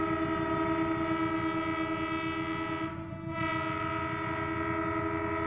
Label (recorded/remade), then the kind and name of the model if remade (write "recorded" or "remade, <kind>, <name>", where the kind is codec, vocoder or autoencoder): recorded